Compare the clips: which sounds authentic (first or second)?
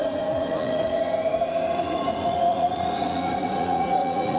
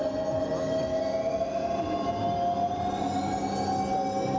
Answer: second